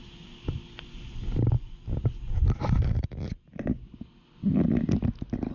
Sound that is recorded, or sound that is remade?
recorded